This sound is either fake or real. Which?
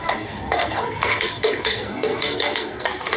fake